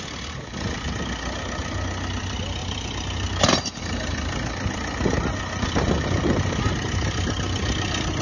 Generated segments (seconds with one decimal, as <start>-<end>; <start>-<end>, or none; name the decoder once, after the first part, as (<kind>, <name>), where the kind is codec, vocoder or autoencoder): 2.6-6.7 (vocoder, BigVGAN v2)